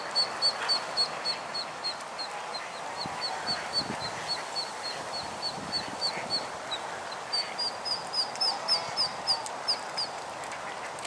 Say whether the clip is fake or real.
real